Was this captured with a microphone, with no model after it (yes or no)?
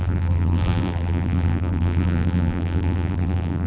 no